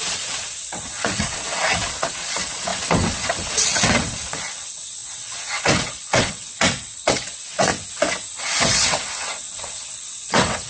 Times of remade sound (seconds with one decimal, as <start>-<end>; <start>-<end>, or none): 0.0-7.7; 8.4-10.7